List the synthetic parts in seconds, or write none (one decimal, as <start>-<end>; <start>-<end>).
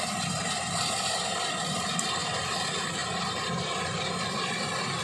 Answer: none